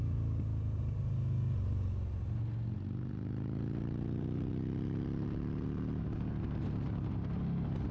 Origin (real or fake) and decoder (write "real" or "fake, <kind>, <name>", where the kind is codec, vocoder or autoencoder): real